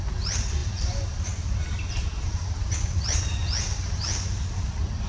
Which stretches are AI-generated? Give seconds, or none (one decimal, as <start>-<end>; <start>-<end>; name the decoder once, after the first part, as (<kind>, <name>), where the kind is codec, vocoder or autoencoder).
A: 0.6-3.2 (vocoder, BigVGAN v2)